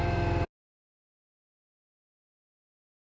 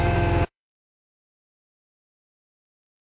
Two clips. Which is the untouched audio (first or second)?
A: first